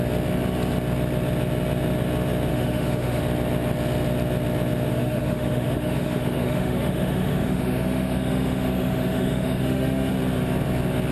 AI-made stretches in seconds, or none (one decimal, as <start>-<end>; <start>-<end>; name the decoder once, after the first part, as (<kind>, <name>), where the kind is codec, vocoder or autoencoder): 2.5-3.2 (autoencoder, DAC-VAE); 4.9-10.1